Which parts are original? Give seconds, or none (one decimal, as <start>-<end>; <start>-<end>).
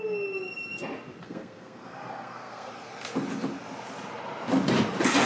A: 0.0-1.2; 2.7-5.3